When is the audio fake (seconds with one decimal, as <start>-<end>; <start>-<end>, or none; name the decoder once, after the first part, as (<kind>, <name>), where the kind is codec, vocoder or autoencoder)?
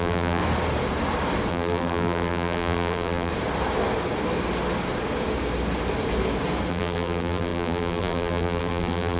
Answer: 0.0-0.4 (vocoder, BigVGAN v2); 1.5-3.3; 6.7-9.2